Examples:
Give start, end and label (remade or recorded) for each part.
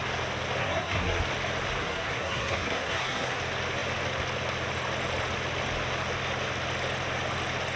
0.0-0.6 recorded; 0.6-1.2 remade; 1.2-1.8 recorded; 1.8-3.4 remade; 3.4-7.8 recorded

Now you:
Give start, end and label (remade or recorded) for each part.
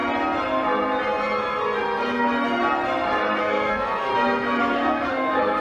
0.0-3.4 recorded; 3.4-4.1 remade; 4.1-4.6 recorded; 4.6-5.6 remade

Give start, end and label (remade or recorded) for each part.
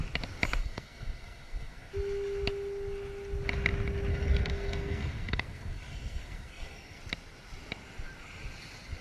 0.0-0.6 recorded; 0.6-1.9 remade; 1.9-4.1 recorded; 4.1-7.0 remade; 7.0-9.0 recorded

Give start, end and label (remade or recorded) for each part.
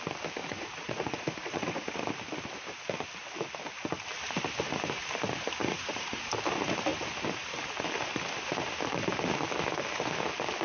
0.0-0.4 recorded; 0.4-2.0 remade; 2.0-5.6 recorded; 5.6-6.3 remade; 6.3-10.6 recorded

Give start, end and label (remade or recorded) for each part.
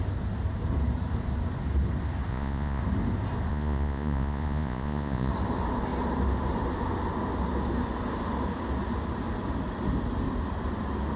0.0-2.3 recorded; 2.3-2.8 remade; 2.8-3.5 recorded; 3.5-5.3 remade; 5.3-11.2 recorded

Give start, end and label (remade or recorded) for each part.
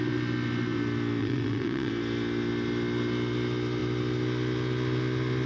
0.0-1.2 recorded; 1.2-1.9 remade; 1.9-5.5 recorded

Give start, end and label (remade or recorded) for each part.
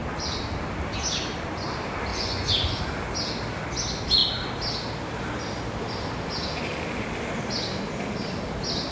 0.0-2.1 recorded; 2.1-2.8 remade; 2.8-8.9 recorded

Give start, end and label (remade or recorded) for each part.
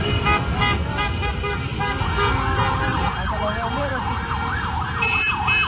0.0-5.7 recorded